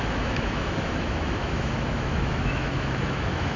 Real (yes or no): no